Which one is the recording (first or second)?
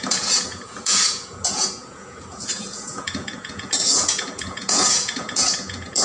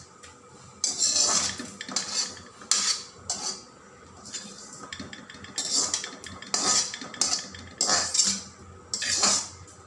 second